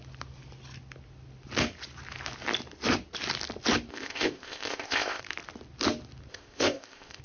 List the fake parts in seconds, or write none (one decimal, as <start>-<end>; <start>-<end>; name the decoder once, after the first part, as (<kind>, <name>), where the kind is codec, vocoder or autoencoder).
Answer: 3.9-5.2 (codec, ZipCodec); 6.3-7.2